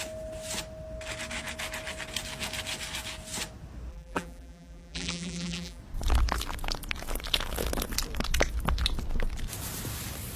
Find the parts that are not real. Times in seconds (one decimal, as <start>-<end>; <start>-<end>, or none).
3.9-5.8

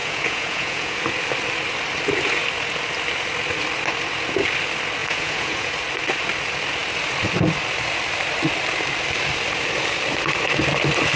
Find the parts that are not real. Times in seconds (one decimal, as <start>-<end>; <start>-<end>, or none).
0.0-1.0; 5.0-5.7

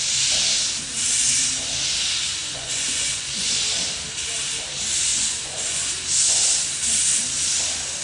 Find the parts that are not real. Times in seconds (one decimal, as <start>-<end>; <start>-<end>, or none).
2.4-3.5; 5.1-5.9

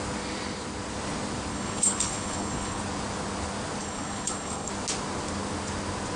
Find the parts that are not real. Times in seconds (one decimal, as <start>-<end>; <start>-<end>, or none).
1.5-2.8; 3.8-4.7

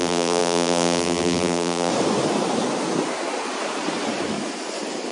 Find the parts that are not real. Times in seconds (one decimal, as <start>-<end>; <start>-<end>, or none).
0.0-1.9

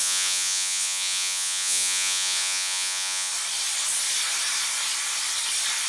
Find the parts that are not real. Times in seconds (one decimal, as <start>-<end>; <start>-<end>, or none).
0.0-3.3

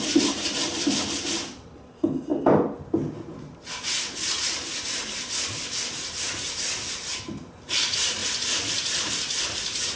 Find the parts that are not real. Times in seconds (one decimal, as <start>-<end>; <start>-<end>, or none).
none